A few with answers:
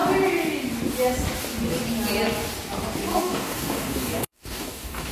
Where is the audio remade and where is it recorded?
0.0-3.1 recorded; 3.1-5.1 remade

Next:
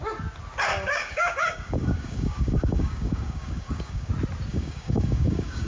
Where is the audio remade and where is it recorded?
0.0-0.7 recorded; 0.7-4.1 remade; 4.1-4.5 recorded; 4.5-5.7 remade

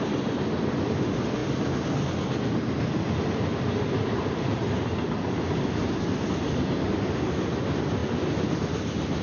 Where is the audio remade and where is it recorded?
0.0-9.2 recorded

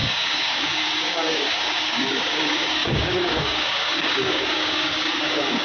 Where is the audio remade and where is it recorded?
0.0-5.6 remade

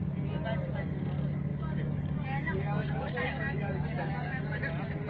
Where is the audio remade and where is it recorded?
0.0-1.5 recorded; 1.5-4.6 remade; 4.6-5.1 recorded